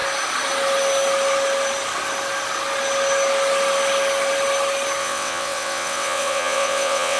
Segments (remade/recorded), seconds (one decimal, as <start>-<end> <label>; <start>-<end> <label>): 0.0-5.0 recorded; 5.0-7.2 remade